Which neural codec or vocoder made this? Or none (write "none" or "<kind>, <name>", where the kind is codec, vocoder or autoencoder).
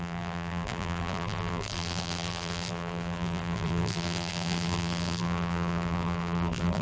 vocoder, BigVGAN v2